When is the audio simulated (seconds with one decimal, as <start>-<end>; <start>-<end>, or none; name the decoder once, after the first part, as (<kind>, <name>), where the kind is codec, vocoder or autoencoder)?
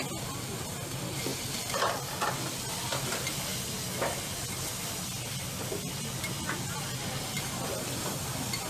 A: none